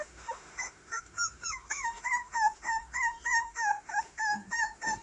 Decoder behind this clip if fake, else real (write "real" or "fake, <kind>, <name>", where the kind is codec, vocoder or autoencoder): fake, autoencoder, DAC-VAE